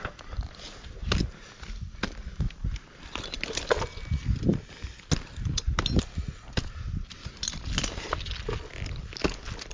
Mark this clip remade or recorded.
recorded